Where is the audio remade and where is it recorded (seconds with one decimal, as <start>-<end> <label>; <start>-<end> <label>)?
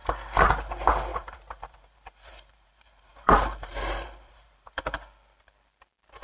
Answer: 0.0-1.1 recorded; 1.1-4.8 remade; 4.8-6.2 recorded